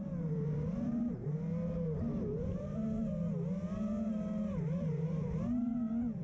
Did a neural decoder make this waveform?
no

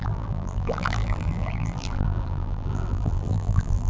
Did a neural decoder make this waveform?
yes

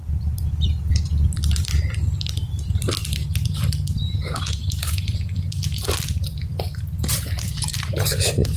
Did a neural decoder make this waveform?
yes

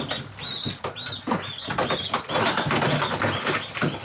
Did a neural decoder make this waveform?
no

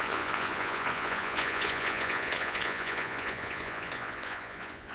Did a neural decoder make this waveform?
yes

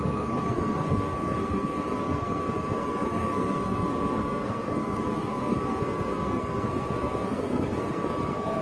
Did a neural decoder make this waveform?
yes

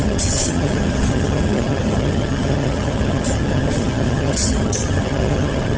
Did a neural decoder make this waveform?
yes